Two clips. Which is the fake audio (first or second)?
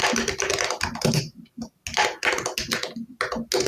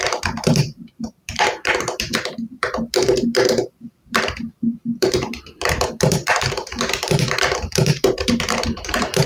second